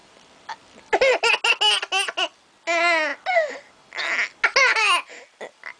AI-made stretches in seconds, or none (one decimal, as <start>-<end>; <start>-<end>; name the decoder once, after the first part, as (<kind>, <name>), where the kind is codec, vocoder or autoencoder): 0.0-1.0 (vocoder, BigVGAN v2)